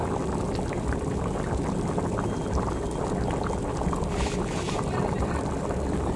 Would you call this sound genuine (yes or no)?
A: yes